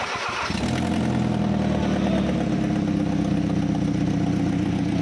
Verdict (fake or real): real